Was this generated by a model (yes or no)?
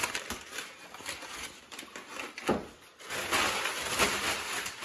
no